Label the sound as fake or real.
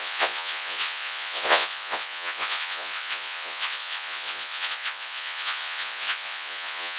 fake